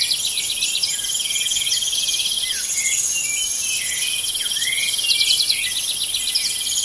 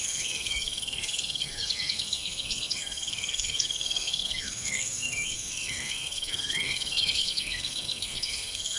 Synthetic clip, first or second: second